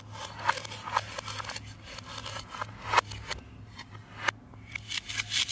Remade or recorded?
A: recorded